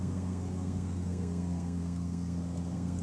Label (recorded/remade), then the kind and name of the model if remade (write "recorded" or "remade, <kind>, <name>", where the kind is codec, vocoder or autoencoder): remade, codec, SNAC